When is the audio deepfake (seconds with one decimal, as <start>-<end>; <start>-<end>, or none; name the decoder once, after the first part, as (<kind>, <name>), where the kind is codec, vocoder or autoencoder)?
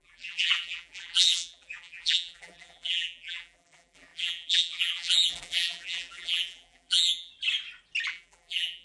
0.0-7.3 (vocoder, BigVGAN v2); 8.1-8.8